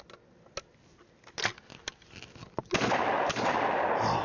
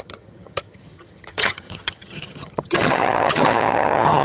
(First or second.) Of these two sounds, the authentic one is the first